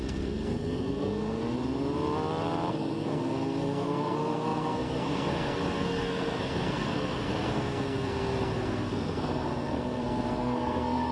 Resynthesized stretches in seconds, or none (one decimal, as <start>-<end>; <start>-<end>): 0.0-1.4; 2.7-11.1